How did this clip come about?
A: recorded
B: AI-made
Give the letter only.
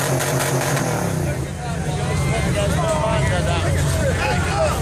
A